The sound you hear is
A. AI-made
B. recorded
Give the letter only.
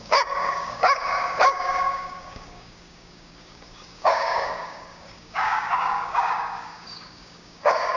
A